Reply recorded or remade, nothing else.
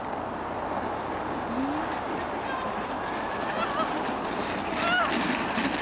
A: recorded